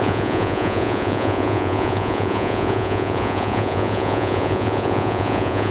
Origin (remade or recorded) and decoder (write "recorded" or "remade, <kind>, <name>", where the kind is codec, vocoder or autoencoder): remade, vocoder, Vocos